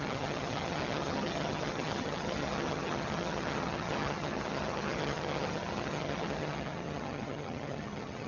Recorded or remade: remade